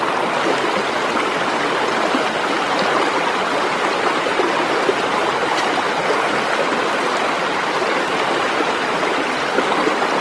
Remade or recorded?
recorded